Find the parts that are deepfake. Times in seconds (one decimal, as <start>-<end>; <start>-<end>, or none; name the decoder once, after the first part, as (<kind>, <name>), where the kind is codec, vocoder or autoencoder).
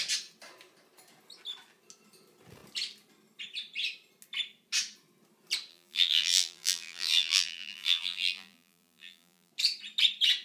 5.7-9.5 (vocoder, BigVGAN v2)